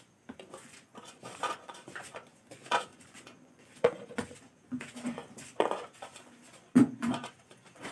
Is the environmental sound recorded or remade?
remade